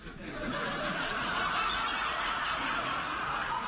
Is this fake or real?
fake